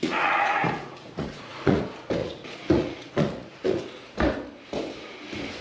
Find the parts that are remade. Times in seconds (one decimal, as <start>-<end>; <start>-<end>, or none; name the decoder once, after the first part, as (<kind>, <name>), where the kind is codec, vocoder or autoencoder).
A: 0.0-1.8 (vocoder, Vocos); 2.2-3.8